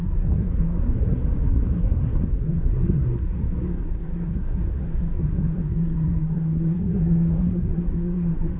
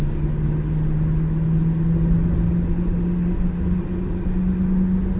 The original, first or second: second